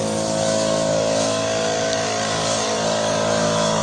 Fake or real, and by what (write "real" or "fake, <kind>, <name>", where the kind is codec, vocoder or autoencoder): fake, codec, DAC